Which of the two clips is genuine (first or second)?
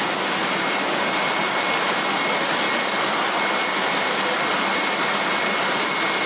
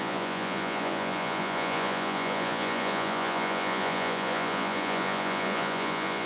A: first